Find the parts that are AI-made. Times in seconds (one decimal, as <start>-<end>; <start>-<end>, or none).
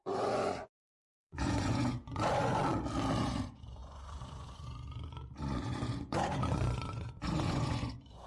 0.0-2.6; 3.2-8.3